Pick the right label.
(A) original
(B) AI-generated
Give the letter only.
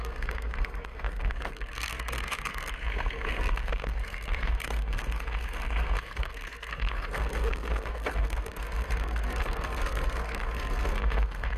B